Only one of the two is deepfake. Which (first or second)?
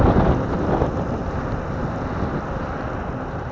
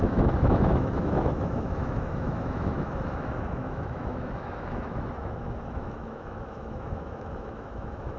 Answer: second